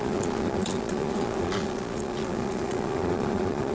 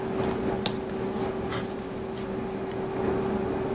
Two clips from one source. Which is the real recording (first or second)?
second